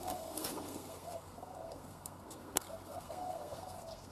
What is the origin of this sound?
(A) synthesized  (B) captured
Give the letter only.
A